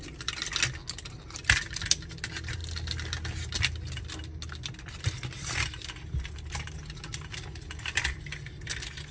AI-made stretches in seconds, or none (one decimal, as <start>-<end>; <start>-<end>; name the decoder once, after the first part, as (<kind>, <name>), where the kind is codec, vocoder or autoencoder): none